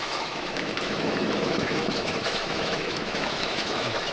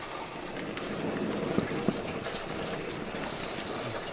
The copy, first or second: first